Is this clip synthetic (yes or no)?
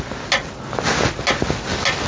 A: no